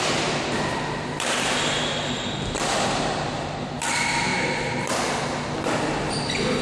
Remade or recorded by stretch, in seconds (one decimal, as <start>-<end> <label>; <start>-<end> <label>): 0.0-6.6 recorded